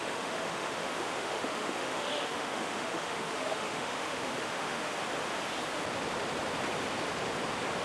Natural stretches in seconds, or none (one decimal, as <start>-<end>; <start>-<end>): 4.9-7.8